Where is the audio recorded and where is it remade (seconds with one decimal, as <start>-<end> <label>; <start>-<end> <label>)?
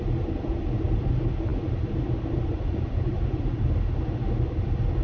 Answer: 0.0-5.0 recorded